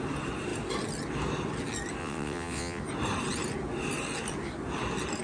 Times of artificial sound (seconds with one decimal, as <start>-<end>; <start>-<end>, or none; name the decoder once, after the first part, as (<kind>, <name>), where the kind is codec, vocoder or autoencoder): 2.0-2.8 (vocoder, WaveNeXt)